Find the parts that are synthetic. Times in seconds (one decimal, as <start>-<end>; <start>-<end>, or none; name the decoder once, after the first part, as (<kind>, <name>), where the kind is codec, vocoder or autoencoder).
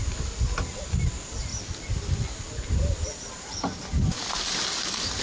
none